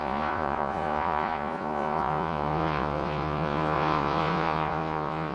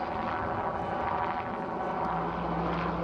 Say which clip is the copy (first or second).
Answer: first